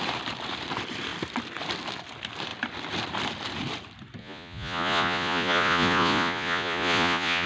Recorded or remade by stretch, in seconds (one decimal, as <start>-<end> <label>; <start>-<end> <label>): 0.0-4.2 recorded; 4.2-7.5 remade